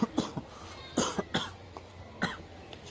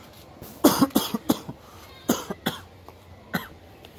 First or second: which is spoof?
second